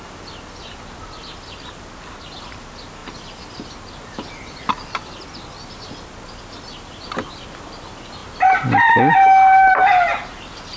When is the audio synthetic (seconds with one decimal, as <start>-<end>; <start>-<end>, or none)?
none